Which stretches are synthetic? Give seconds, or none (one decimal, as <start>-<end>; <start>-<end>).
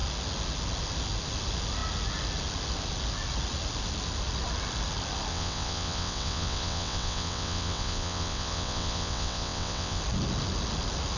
5.3-10.0